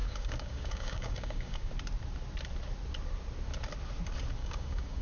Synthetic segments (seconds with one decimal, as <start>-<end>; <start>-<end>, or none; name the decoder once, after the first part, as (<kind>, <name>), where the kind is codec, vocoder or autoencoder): 0.0-1.7 (codec, DAC); 4.4-5.0